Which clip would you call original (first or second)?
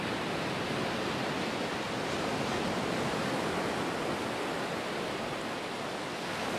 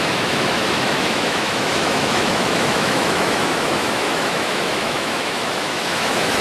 first